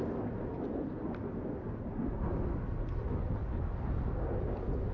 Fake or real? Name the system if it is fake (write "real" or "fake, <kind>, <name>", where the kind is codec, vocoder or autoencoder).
real